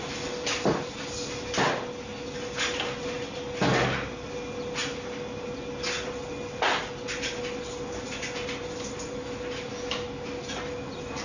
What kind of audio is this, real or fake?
real